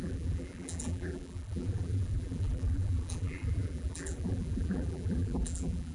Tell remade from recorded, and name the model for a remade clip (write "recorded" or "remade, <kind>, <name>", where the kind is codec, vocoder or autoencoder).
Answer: remade, vocoder, BigVGAN v2